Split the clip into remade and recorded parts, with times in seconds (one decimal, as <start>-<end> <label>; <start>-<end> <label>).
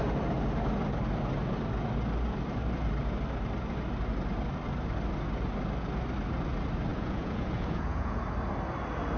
0.0-6.9 recorded; 6.9-8.2 remade; 8.2-9.2 recorded